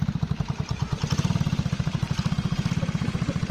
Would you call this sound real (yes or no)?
no